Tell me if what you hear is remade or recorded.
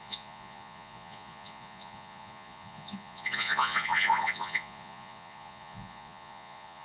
remade